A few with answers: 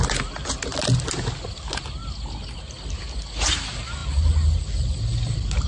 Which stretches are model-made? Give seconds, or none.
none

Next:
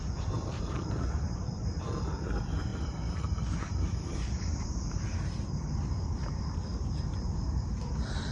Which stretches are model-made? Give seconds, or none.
0.0-8.3 (vocoder, BigVGAN v2)

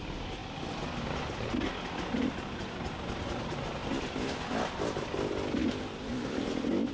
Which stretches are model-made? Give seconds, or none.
none

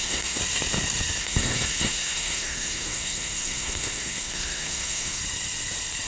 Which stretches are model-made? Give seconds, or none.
0.0-0.4 (codec, SNAC); 1.2-5.2